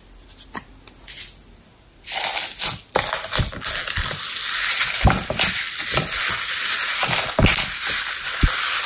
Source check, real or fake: real